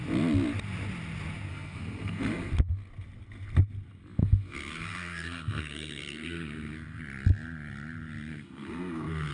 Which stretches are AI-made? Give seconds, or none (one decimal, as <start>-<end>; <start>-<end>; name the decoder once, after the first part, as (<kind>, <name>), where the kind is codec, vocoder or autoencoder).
1.5-2.5 (codec, SNAC); 4.2-7.0; 8.3-9.3